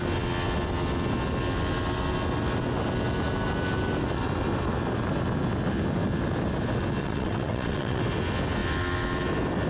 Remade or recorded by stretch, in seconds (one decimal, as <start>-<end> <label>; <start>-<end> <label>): 0.0-7.0 recorded; 7.0-8.0 remade; 8.0-9.7 recorded